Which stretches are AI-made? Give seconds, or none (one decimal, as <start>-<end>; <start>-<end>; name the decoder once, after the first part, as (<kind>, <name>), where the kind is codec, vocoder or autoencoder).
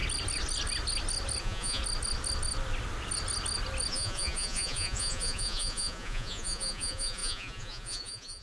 1.4-1.8 (vocoder, Vocos); 3.9-8.4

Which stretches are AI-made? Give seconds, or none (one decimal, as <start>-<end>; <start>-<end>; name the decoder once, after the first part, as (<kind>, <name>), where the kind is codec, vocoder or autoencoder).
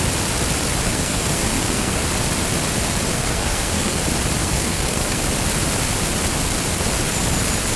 0.9-2.0 (codec, SNAC); 3.1-4.0; 4.4-5.2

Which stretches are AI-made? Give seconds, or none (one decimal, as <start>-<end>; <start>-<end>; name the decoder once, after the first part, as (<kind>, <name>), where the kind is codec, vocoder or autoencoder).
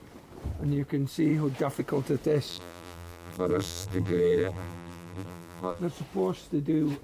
2.5-5.8 (vocoder, BigVGAN v2)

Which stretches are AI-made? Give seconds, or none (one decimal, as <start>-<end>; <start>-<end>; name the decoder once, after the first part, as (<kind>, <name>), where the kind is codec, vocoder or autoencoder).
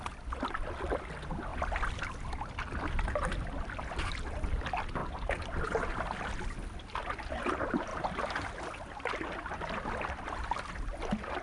7.9-10.8 (vocoder, BigVGAN v2)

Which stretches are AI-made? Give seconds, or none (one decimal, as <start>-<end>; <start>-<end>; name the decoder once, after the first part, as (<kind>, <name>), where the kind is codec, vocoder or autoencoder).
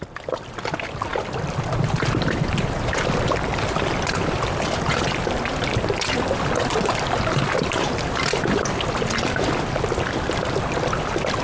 none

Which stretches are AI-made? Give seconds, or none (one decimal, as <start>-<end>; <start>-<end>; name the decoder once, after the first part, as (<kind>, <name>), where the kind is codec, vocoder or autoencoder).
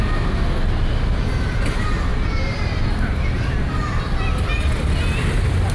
none